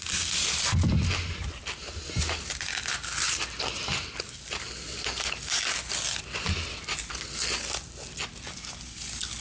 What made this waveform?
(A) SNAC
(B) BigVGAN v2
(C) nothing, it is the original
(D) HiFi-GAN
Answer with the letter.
C